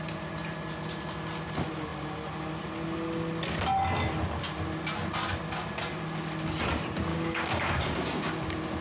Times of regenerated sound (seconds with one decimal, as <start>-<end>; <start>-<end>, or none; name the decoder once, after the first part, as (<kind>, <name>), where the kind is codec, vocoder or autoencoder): 7.1-8.0 (codec, DAC)